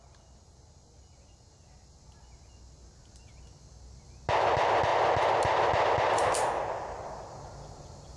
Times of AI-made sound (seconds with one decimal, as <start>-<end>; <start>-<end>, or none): none

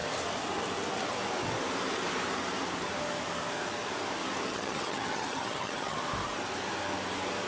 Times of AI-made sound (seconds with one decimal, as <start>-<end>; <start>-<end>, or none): 4.5-6.0

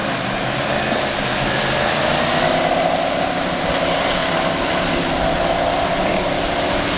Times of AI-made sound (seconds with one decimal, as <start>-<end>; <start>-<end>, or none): none